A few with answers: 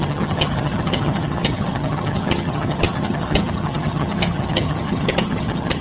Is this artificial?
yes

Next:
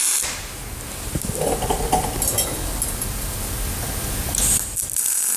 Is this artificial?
no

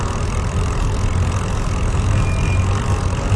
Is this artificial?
no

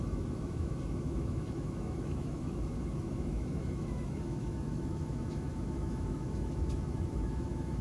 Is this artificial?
yes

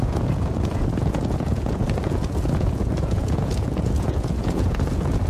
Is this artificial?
yes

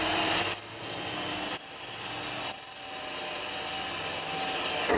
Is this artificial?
no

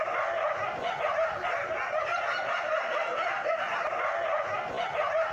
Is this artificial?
no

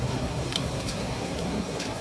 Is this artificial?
yes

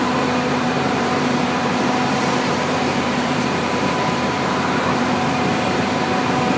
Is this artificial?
yes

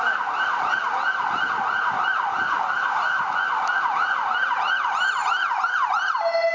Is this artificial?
no